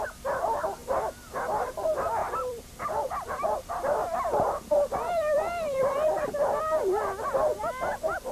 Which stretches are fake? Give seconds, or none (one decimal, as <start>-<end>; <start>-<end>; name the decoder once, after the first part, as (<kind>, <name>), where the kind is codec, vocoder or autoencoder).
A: 2.2-3.3 (vocoder, BigVGAN v2); 4.0-6.6